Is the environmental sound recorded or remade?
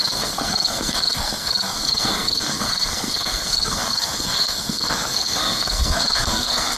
remade